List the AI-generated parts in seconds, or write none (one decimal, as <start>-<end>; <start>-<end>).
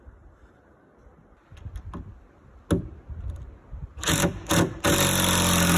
none